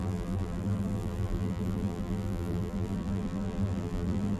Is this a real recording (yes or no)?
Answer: no